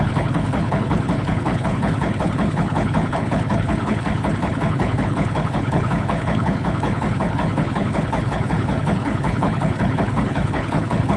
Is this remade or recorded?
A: remade